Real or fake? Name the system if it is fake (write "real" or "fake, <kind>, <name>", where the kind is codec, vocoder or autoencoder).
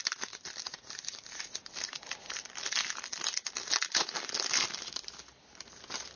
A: real